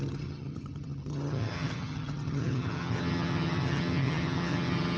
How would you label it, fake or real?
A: fake